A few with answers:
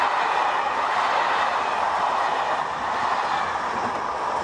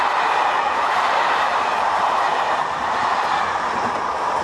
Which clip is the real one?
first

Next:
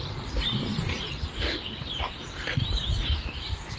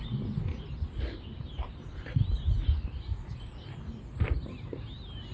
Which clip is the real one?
second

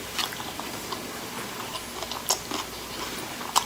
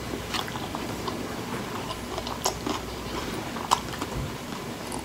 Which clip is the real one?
first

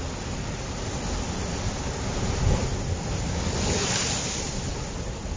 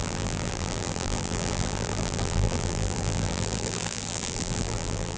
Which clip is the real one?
first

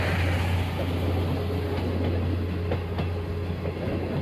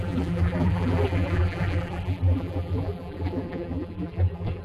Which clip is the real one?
first